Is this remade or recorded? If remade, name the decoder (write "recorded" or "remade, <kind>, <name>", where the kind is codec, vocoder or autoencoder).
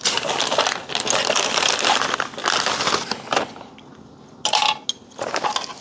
recorded